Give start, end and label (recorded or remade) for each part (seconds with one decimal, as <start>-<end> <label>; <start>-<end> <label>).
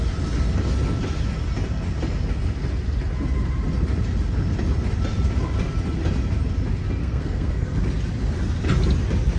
0.0-7.0 recorded; 7.0-7.8 remade; 7.8-9.4 recorded